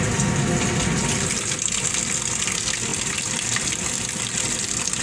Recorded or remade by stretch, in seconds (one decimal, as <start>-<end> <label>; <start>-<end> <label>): 0.0-5.0 recorded